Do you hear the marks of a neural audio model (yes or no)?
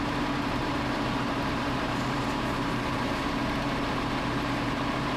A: yes